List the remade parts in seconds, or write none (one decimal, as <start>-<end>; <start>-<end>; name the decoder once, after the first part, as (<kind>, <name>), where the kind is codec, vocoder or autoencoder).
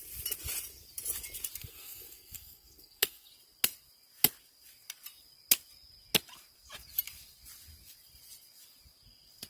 1.6-3.3 (codec, SNAC)